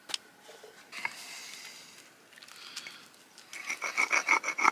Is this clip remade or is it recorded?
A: recorded